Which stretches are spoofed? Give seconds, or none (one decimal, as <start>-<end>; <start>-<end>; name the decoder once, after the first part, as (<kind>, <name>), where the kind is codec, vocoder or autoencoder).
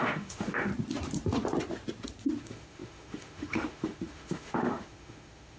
0.0-0.7 (autoencoder, DAC-VAE); 2.4-5.6